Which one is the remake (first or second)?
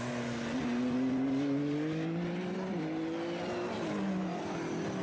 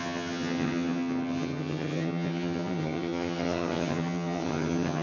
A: second